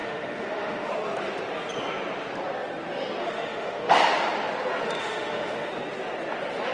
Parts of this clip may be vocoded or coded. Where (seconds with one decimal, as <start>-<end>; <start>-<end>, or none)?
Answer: 0.0-0.9; 3.2-4.0; 5.0-5.7